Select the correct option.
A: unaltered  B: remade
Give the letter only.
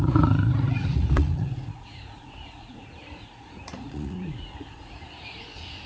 B